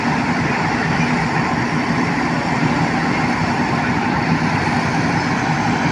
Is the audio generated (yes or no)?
yes